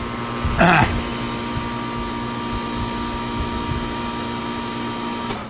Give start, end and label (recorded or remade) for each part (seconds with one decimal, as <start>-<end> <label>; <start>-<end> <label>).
0.0-5.5 recorded